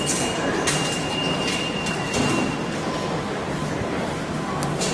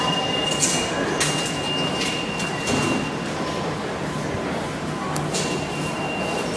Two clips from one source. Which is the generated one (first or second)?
first